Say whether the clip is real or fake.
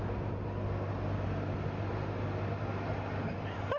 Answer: real